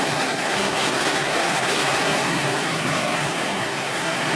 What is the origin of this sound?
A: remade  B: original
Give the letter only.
A